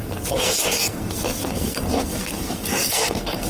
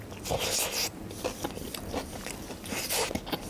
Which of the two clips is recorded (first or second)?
second